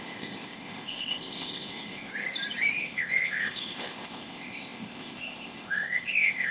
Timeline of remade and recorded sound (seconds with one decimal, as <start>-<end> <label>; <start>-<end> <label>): 0.0-2.1 remade; 2.1-2.8 recorded; 2.8-6.5 remade